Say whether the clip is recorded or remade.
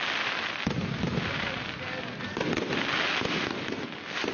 recorded